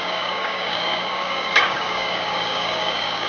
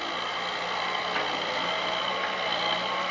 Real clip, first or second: second